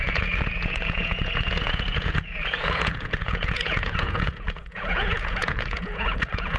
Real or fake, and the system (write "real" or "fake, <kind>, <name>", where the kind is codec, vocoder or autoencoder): fake, vocoder, Vocos